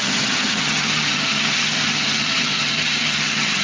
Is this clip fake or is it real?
fake